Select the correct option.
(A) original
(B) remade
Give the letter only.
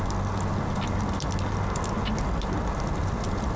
A